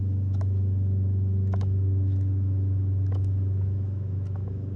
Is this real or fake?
fake